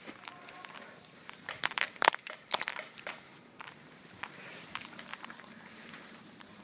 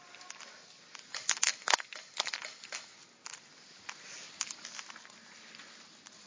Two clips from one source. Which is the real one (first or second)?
second